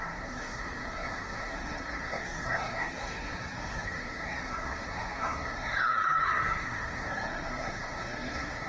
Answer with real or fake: fake